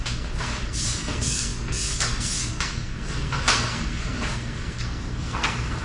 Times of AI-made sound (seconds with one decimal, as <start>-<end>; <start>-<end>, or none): 0.0-5.8